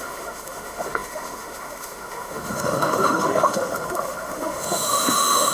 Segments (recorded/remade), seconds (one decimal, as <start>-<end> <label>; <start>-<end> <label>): 0.0-5.5 remade